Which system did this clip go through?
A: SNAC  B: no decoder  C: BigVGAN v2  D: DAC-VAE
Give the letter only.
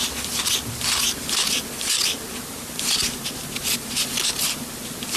B